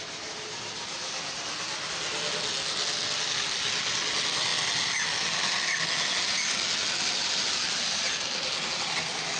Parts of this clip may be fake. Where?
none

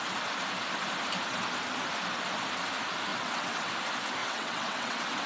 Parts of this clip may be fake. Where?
3.1-3.7; 4.2-5.3

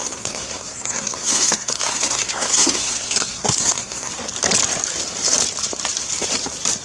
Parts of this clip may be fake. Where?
0.0-4.1

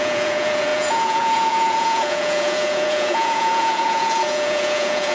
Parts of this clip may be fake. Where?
0.0-5.1

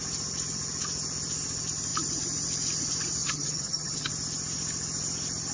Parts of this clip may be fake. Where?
3.2-4.1